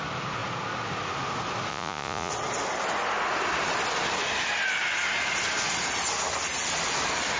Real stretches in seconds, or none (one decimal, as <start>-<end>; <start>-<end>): 0.0-1.7; 2.3-7.4